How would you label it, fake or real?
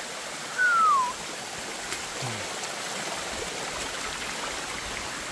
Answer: real